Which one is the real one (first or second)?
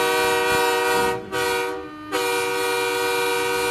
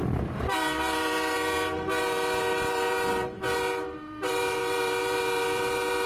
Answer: first